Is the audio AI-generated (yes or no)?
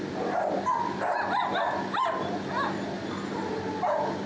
no